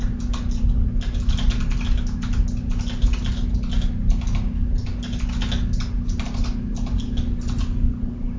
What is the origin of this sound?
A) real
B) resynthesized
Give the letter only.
A